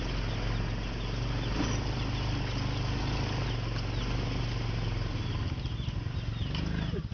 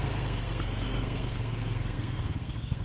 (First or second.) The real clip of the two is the first